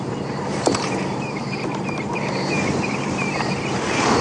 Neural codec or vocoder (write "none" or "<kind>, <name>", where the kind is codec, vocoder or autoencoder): vocoder, BigVGAN v2